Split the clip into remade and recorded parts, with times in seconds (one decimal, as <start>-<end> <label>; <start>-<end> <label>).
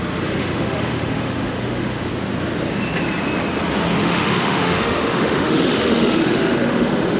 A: 0.0-0.4 recorded; 0.4-2.1 remade; 2.1-4.0 recorded; 4.0-7.2 remade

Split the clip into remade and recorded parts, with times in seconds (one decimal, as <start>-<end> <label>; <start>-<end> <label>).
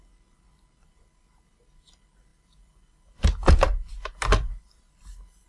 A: 0.0-2.3 recorded; 2.3-4.8 remade; 4.8-5.5 recorded